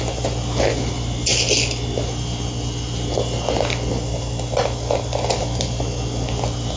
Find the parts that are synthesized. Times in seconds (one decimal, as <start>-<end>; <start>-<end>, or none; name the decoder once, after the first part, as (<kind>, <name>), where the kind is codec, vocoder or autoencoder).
none